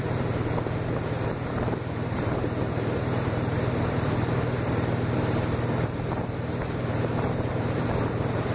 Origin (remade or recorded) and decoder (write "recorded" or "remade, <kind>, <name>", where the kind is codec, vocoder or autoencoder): remade, vocoder, BigVGAN v2